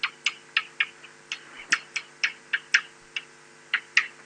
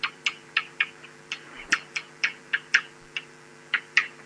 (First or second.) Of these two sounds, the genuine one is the first